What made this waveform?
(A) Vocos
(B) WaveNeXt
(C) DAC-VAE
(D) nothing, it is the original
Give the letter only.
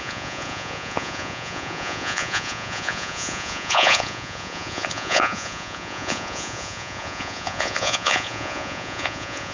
A